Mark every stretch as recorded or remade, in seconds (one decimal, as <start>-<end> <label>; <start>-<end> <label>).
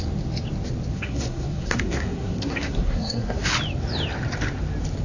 0.0-0.9 recorded; 0.9-3.5 remade; 3.5-5.0 recorded